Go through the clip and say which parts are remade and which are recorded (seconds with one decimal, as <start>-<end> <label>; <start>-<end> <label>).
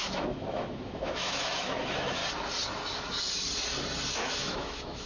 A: 0.0-2.2 remade; 2.2-4.1 recorded; 4.1-5.1 remade